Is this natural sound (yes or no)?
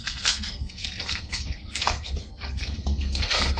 no